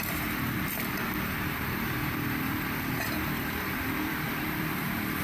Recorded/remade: remade